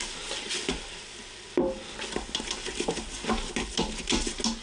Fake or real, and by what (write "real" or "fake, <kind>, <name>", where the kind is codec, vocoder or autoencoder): real